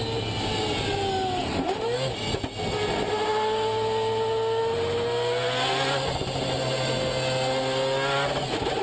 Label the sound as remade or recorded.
recorded